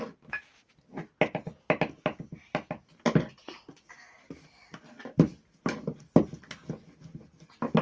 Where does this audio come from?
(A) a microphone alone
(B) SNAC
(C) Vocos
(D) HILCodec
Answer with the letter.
A